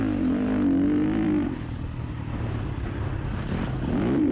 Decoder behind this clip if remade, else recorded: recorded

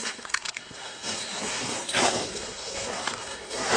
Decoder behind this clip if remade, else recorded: remade, codec, SNAC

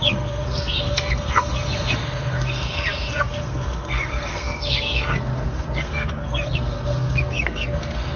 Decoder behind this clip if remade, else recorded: remade, codec, SNAC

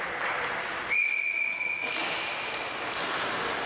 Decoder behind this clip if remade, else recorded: recorded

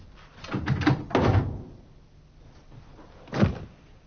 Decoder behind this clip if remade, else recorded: recorded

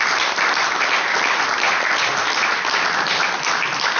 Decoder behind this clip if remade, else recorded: recorded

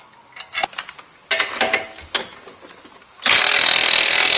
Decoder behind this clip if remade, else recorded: recorded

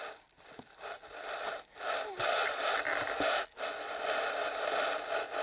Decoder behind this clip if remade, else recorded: recorded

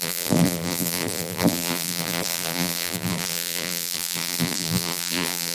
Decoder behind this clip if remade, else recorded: remade, vocoder, BigVGAN v2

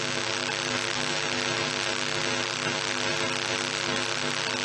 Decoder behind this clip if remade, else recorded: recorded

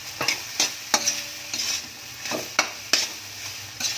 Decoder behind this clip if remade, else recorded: recorded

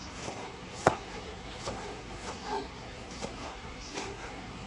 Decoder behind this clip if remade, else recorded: remade, codec, SNAC